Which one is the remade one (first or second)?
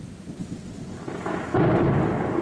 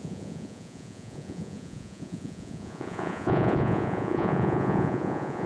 second